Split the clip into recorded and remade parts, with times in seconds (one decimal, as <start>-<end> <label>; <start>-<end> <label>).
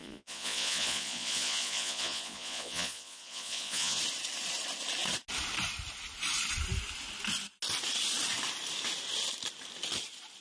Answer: 0.0-4.0 remade; 4.0-10.4 recorded